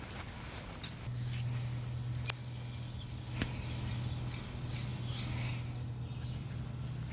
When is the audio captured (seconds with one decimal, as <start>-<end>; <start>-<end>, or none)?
0.0-7.1